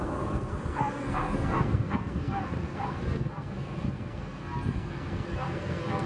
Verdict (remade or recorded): remade